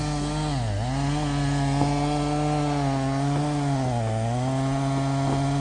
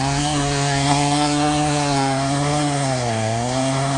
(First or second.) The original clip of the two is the first